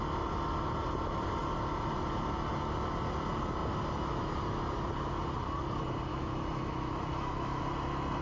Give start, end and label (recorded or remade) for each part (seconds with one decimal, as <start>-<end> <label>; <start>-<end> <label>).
0.0-6.1 recorded; 6.1-7.6 remade; 7.6-8.2 recorded